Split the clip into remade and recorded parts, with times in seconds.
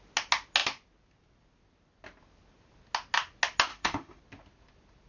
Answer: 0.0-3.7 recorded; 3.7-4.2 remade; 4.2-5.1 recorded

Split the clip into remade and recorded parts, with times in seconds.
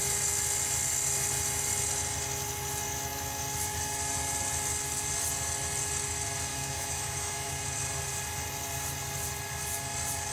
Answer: 0.0-6.5 recorded; 6.5-7.5 remade; 7.5-10.3 recorded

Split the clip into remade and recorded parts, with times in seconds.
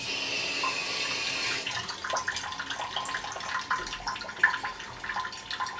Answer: 0.0-5.8 recorded